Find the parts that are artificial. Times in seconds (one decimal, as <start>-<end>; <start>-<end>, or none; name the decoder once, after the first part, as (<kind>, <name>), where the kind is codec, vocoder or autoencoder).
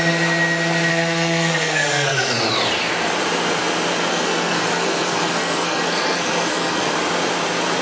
0.9-2.4 (codec, SNAC); 4.1-6.9